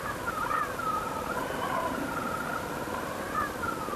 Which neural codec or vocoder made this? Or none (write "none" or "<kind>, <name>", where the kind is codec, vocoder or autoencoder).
none